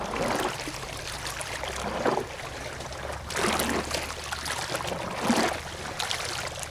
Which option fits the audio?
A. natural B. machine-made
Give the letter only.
A